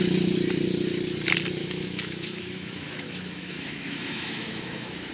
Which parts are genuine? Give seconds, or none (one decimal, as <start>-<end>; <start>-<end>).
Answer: 0.0-1.6